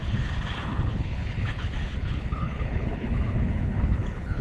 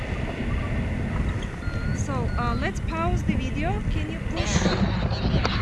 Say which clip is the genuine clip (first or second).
second